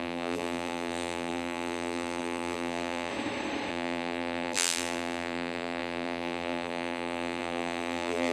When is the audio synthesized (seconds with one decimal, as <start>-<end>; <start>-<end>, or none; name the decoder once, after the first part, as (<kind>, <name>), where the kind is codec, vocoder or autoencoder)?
0.0-3.1 (vocoder, BigVGAN v2); 3.7-8.3